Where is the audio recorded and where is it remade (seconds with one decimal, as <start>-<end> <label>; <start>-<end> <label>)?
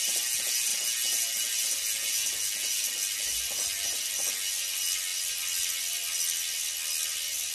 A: 0.0-7.5 recorded